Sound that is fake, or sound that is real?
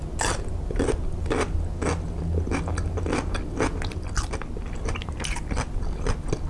real